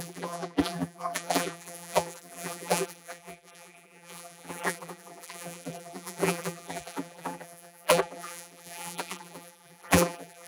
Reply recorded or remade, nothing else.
remade